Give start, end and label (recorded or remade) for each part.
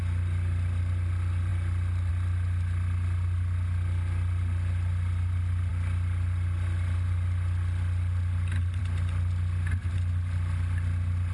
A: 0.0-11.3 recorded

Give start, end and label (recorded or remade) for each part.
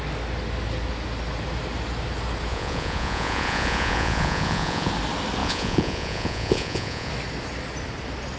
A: 0.0-2.5 recorded; 2.5-4.9 remade; 4.9-5.4 recorded; 5.4-7.1 remade; 7.1-8.4 recorded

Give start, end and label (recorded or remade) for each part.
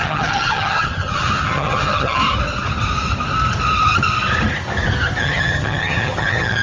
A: 0.0-2.2 remade; 2.2-5.2 recorded; 5.2-6.6 remade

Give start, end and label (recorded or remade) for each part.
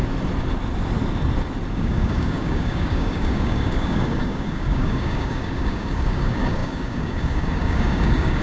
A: 0.0-1.7 recorded; 1.7-8.4 remade